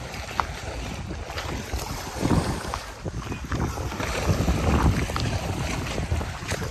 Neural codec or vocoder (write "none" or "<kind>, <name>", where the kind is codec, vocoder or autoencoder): vocoder, BigVGAN v2